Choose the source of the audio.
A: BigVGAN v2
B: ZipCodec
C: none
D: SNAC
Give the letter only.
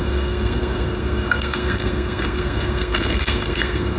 D